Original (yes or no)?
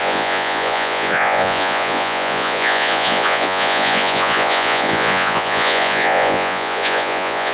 no